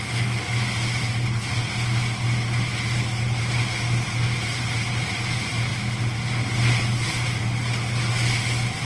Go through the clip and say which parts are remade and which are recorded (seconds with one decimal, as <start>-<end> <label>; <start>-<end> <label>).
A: 0.0-8.8 recorded